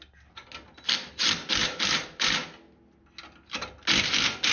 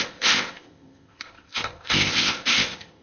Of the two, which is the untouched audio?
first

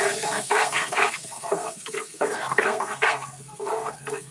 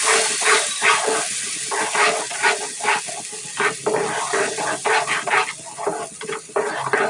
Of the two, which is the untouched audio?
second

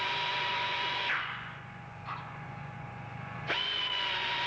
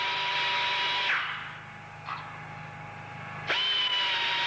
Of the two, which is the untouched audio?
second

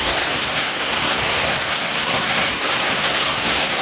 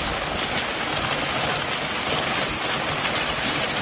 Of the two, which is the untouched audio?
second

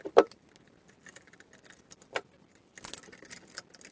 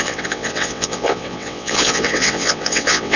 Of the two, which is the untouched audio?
first